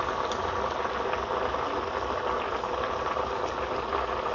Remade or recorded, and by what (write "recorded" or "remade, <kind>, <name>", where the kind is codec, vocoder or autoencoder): recorded